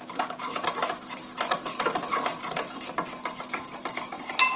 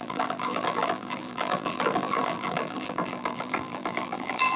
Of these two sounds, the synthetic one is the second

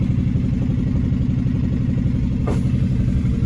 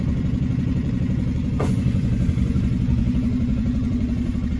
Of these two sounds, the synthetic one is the second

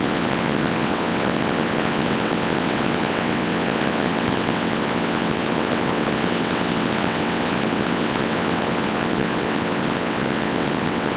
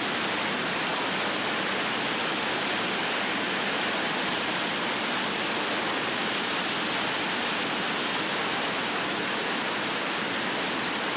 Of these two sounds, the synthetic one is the first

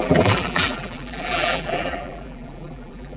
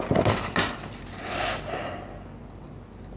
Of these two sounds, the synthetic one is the first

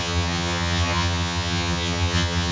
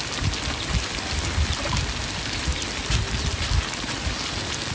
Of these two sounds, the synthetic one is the first